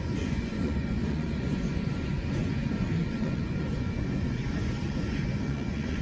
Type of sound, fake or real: fake